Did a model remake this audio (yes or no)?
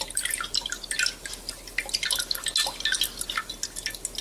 no